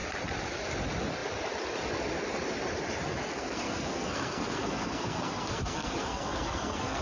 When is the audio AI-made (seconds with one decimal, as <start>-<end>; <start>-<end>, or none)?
3.3-7.0